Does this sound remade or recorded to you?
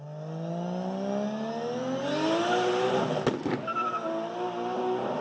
recorded